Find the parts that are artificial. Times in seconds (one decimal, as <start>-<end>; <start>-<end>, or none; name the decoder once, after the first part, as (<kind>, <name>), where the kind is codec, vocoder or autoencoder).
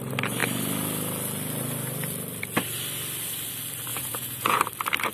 3.9-4.6 (vocoder, Vocos)